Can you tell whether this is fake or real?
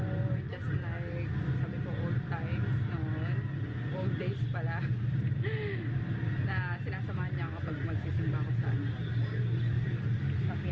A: real